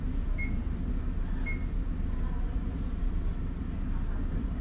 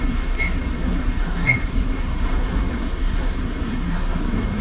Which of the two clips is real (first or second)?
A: first